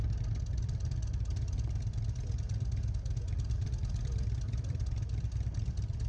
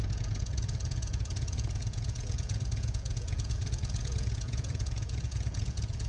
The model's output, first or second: second